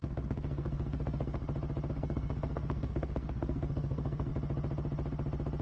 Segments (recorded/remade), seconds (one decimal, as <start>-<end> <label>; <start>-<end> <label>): 0.0-1.4 remade; 1.4-1.9 recorded; 1.9-4.3 remade; 4.3-5.6 recorded